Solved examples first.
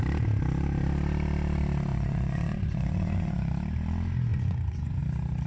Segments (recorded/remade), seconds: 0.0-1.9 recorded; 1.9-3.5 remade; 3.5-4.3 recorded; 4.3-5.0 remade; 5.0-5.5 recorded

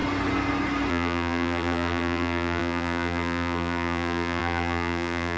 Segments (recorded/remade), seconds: 0.0-0.9 recorded; 0.9-5.4 remade

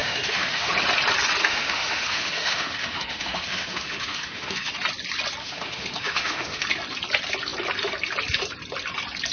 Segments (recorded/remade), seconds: 0.0-0.7 remade; 0.7-1.4 recorded; 1.4-4.7 remade; 4.7-5.4 recorded; 5.4-6.6 remade; 6.6-9.3 recorded

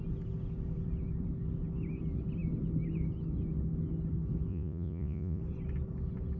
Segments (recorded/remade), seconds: 0.0-4.5 recorded; 4.5-5.4 remade; 5.4-6.4 recorded

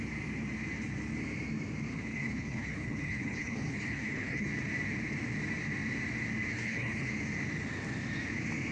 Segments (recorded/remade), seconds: 0.0-1.9 recorded; 1.9-4.5 remade; 4.5-6.5 recorded; 6.5-7.1 remade; 7.1-8.7 recorded